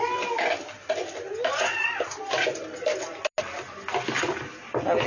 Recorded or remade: recorded